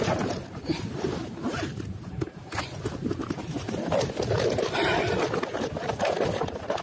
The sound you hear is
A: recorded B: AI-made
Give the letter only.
A